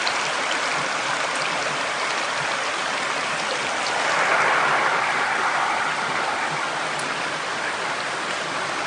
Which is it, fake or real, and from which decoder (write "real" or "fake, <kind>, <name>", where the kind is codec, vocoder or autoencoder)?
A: real